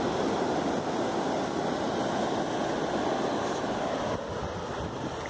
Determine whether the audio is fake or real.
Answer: real